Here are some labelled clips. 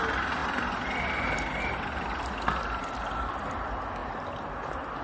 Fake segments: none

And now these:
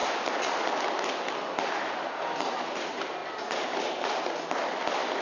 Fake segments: none

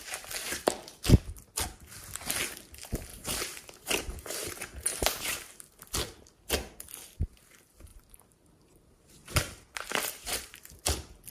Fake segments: 3.1-4.5 (vocoder, BigVGAN v2); 7.9-10.8